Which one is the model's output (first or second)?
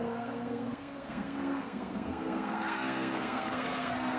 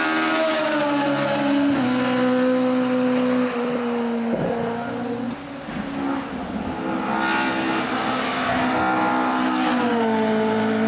first